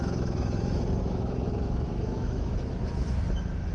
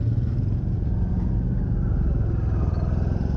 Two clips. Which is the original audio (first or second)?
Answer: second